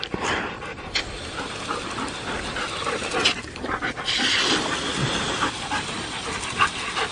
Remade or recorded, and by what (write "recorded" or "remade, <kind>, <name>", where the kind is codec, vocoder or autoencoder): recorded